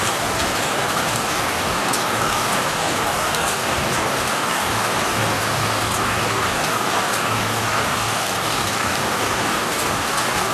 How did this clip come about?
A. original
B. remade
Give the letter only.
B